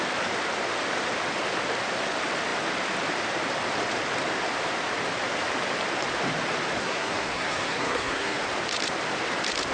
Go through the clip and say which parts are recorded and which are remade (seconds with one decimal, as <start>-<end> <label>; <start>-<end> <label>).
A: 0.0-6.8 recorded; 6.8-8.4 remade; 8.4-9.7 recorded